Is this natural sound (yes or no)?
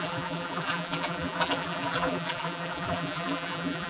no